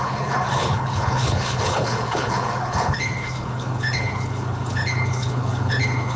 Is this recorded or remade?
remade